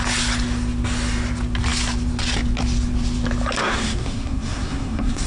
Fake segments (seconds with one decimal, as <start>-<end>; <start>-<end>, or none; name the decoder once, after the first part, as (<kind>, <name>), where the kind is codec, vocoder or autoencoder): 3.6-5.3 (codec, SNAC)

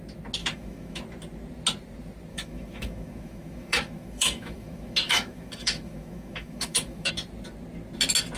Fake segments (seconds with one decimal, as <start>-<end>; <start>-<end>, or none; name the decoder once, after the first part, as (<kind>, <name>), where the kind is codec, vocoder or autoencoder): 0.4-1.0 (autoencoder, DAC-VAE); 2.3-7.1

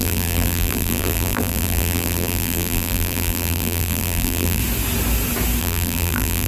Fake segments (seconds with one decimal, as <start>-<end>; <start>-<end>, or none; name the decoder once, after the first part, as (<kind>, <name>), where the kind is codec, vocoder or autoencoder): 0.0-4.6 (vocoder, BigVGAN v2); 5.6-6.5

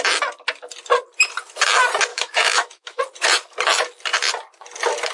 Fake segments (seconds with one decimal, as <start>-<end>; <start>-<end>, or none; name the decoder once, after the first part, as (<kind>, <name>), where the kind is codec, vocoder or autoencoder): 2.1-3.0 (autoencoder, DAC-VAE)

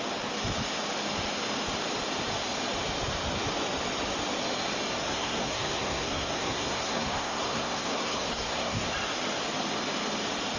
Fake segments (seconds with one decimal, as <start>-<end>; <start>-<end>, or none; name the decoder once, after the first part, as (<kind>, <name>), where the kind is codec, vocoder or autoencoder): 5.0-8.9 (codec, SNAC)

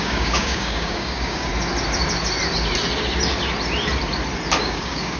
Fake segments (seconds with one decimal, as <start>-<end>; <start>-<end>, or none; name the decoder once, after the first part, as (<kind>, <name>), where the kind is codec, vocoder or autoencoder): 0.0-1.5 (codec, DAC); 4.6-5.2